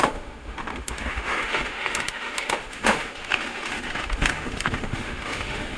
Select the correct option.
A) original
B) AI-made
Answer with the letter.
B